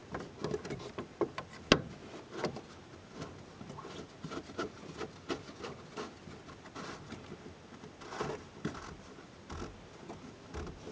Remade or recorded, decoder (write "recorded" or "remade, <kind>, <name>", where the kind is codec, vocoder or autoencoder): recorded